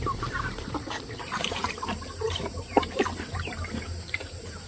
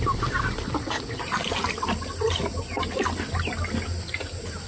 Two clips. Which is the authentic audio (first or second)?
second